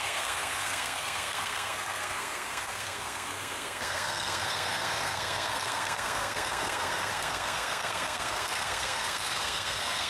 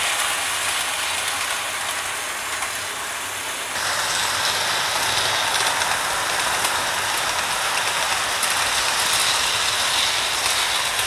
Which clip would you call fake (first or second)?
first